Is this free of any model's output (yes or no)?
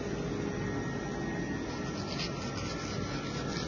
yes